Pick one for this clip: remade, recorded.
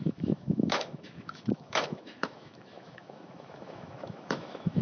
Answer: remade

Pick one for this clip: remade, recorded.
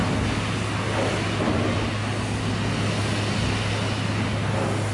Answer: recorded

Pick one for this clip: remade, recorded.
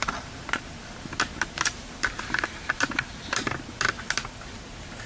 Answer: recorded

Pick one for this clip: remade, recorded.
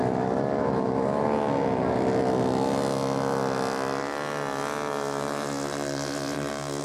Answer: recorded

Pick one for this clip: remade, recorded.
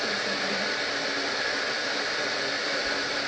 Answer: recorded